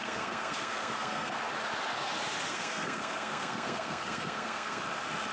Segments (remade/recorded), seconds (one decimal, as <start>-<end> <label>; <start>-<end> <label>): 0.0-1.4 remade; 1.4-2.5 recorded; 2.5-4.8 remade; 4.8-5.3 recorded